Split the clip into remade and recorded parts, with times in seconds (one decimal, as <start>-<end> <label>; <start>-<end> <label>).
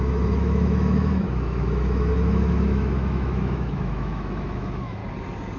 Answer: 0.0-5.0 remade; 5.0-5.6 recorded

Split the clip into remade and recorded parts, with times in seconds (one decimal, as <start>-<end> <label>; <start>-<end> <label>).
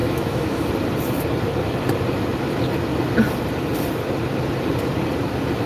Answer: 0.0-0.7 remade; 0.7-5.7 recorded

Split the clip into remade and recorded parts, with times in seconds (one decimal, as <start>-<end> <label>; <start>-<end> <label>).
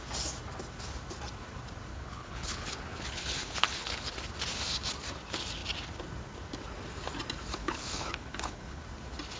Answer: 0.0-1.9 recorded; 1.9-4.1 remade; 4.1-7.6 recorded; 7.6-8.8 remade; 8.8-9.4 recorded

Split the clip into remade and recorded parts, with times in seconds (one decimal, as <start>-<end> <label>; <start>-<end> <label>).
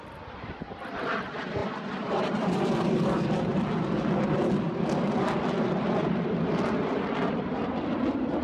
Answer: 0.0-3.5 remade; 3.5-4.8 recorded; 4.8-8.4 remade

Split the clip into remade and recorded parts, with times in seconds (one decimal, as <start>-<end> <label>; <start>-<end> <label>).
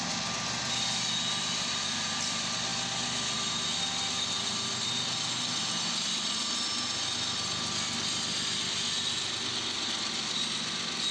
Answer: 0.0-11.1 recorded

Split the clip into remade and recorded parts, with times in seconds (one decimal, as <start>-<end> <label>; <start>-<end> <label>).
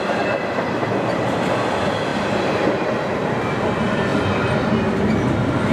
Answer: 0.0-2.1 recorded; 2.1-2.8 remade; 2.8-5.7 recorded